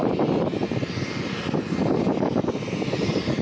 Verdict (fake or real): real